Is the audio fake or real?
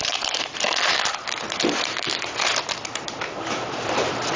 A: fake